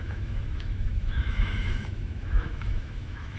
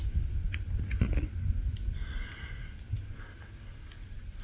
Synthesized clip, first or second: first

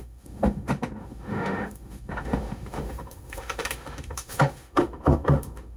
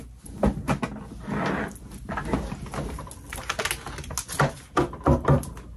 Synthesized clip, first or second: first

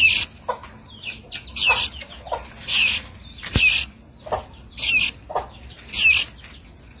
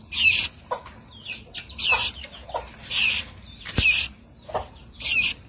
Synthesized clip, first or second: second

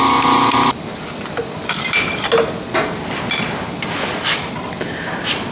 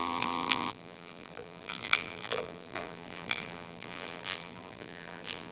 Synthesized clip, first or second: second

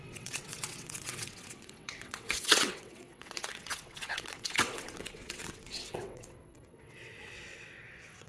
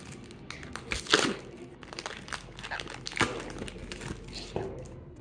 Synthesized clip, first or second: first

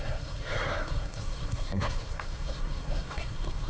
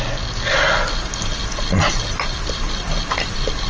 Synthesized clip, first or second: first